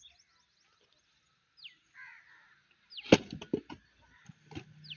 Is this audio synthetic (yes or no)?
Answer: no